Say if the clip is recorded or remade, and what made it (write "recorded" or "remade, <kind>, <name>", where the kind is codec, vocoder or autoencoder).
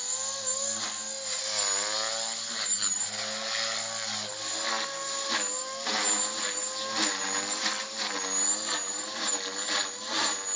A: recorded